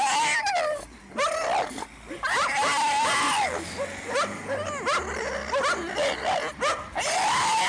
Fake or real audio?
real